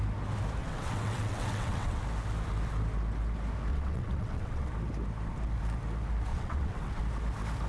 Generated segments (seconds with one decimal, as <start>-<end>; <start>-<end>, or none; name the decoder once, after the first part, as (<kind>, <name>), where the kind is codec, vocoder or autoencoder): 0.6-2.0 (vocoder, WaveNeXt); 3.7-4.7; 6.3-7.0